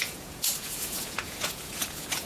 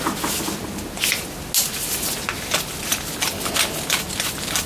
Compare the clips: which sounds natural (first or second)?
second